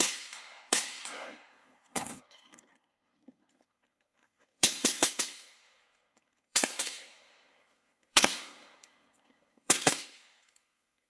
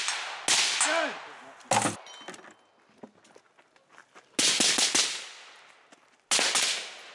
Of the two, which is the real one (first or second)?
second